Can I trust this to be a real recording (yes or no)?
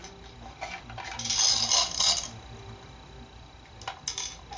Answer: yes